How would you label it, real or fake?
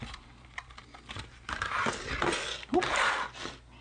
real